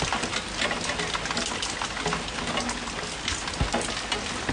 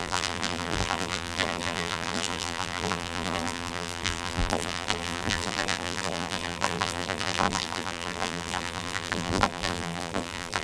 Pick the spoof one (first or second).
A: second